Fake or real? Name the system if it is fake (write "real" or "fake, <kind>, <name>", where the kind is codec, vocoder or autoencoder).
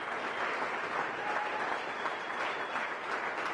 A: real